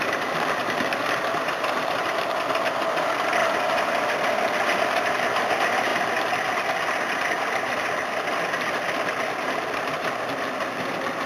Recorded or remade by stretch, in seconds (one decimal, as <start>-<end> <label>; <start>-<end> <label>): 0.0-3.4 remade; 3.4-4.8 recorded; 4.8-11.3 remade